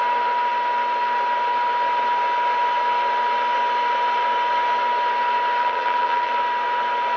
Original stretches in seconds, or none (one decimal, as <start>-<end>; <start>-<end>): 0.0-5.6; 6.3-7.2

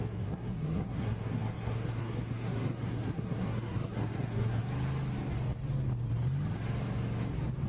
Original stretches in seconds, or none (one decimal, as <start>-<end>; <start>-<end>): 4.6-7.7

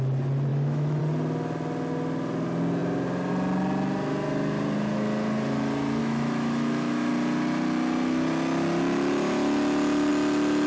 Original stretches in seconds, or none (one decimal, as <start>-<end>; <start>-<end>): 0.0-0.5; 1.0-6.0; 7.1-10.7